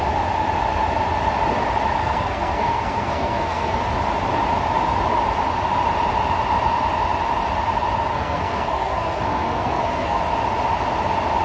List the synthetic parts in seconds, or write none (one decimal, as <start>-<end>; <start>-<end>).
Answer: 2.0-3.8; 8.1-10.2